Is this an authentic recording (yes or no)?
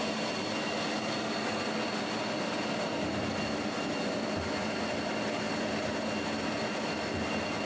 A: yes